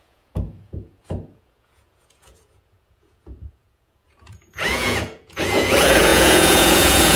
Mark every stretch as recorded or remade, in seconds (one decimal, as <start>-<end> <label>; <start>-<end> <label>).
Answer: 0.0-7.2 remade